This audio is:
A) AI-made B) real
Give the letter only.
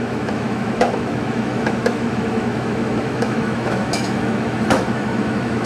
A